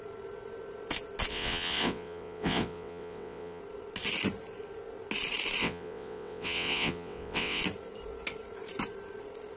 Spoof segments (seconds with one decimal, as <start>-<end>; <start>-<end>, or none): 1.3-3.6; 5.6-7.6